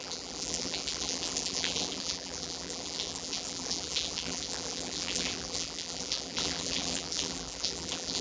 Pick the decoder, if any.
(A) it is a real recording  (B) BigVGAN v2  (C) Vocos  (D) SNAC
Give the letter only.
B